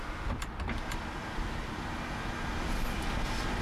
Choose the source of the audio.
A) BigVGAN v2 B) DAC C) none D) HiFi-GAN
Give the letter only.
A